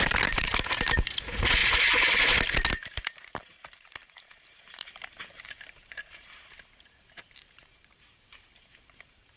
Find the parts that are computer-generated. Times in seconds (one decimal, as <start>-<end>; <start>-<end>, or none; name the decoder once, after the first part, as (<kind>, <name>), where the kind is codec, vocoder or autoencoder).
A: 0.0-1.6 (vocoder, BigVGAN v2); 2.7-9.4